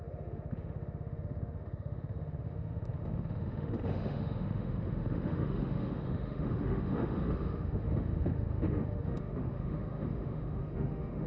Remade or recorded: remade